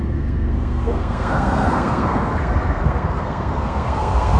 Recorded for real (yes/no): no